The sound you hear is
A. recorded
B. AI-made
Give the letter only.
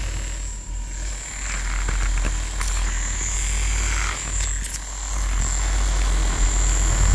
A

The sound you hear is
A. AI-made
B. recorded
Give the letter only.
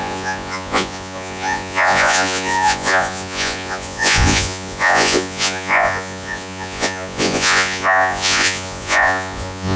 A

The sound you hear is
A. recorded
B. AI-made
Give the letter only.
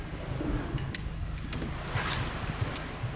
A